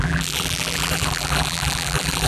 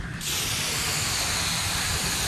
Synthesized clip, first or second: first